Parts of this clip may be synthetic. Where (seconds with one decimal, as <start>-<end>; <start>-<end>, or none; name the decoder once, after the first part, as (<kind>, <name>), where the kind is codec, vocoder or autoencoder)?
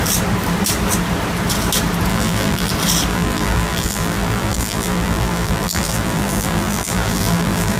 2.1-2.7 (vocoder, BigVGAN v2); 3.1-7.8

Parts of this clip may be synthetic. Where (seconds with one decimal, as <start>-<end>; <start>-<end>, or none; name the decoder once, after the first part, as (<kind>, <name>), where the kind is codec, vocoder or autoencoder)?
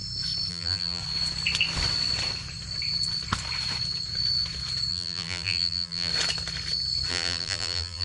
0.5-1.0 (vocoder, BigVGAN v2); 4.9-6.1; 7.1-8.0